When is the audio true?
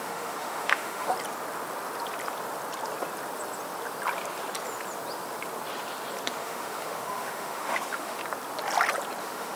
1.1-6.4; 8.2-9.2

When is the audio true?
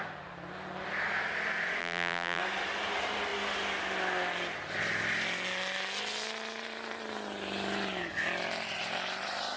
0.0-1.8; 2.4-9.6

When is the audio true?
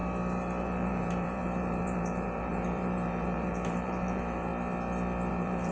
0.0-0.6; 4.5-5.3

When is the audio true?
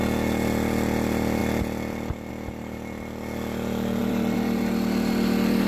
0.0-4.0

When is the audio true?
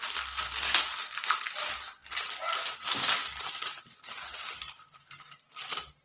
0.0-3.2; 5.5-6.0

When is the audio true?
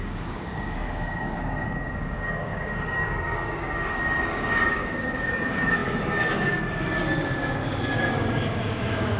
none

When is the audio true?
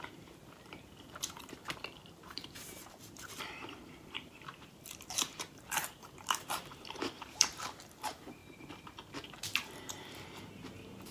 8.4-9.1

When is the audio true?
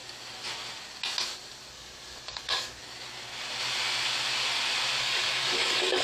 0.0-1.7; 2.8-5.0